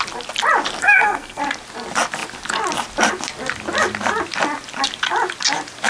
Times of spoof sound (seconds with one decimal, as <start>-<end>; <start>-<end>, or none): 0.8-1.4